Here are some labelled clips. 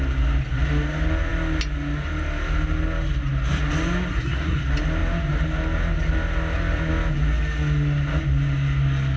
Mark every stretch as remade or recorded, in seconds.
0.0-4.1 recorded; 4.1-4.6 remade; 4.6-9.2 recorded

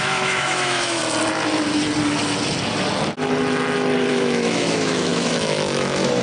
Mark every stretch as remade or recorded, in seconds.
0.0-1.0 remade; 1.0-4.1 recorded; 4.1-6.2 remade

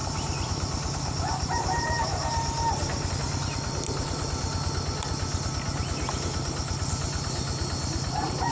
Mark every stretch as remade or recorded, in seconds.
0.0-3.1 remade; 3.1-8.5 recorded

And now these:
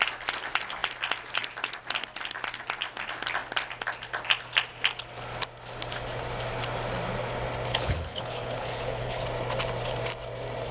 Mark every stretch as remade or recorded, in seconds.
0.0-7.7 recorded; 7.7-9.2 remade; 9.2-10.7 recorded